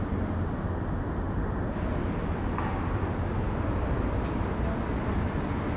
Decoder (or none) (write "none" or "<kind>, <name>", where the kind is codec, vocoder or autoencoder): none